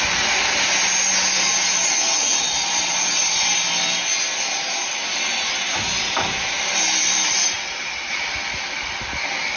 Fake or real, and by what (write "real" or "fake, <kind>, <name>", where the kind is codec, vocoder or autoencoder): real